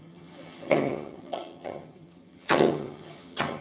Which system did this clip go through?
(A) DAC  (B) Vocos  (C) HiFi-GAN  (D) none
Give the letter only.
C